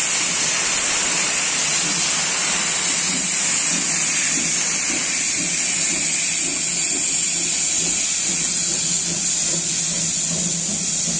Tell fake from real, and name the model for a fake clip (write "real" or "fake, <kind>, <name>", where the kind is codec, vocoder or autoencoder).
real